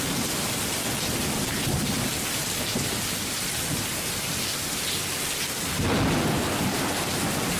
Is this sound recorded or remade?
recorded